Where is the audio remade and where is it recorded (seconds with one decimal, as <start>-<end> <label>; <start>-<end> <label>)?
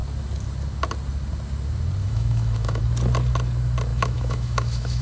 0.0-2.0 recorded; 2.0-2.8 remade; 2.8-3.9 recorded; 3.9-5.0 remade